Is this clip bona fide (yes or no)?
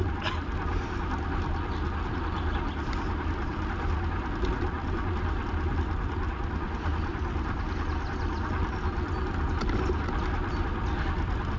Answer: yes